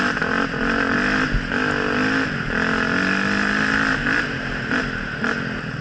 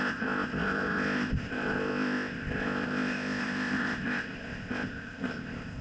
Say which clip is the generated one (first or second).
second